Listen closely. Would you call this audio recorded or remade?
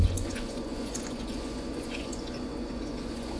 remade